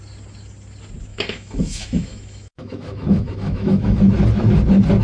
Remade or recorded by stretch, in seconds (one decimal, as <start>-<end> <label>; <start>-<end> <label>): 0.0-1.1 recorded; 1.1-4.0 remade; 4.0-5.0 recorded